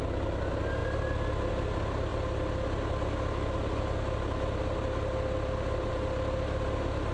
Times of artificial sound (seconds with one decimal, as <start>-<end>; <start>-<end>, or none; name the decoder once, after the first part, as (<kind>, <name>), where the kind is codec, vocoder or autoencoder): none